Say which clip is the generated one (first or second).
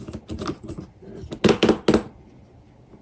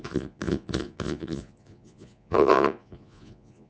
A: second